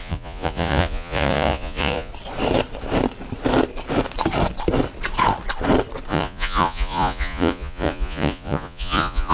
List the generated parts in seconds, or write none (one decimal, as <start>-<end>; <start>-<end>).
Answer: 0.0-2.1; 6.1-9.3